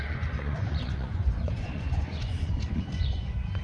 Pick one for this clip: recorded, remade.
remade